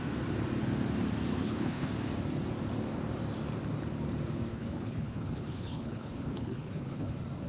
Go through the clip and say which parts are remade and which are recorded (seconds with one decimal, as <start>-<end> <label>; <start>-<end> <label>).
0.0-1.3 recorded; 1.3-1.9 remade; 1.9-4.5 recorded; 4.5-7.1 remade; 7.1-7.5 recorded